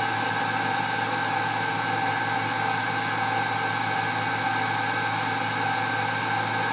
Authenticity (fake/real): real